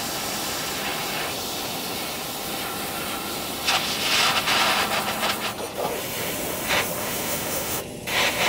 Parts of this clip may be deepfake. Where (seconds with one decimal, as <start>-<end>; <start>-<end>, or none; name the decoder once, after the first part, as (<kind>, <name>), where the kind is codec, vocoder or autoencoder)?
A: 7.0-7.8 (autoencoder, DAC-VAE)